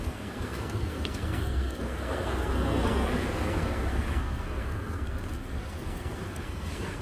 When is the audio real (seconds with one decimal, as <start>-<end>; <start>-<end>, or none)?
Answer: none